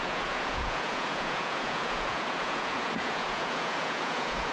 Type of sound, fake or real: fake